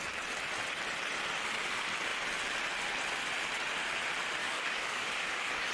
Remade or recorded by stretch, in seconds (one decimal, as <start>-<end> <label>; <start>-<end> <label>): 0.0-4.4 recorded; 4.4-5.7 remade